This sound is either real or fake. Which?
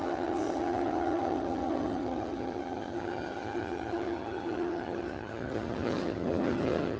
fake